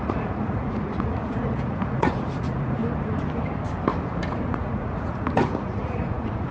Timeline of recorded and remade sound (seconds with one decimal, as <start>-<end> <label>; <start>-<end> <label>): 0.0-2.8 remade; 2.8-4.3 recorded; 4.3-6.5 remade